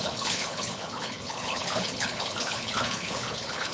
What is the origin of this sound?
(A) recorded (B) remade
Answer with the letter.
B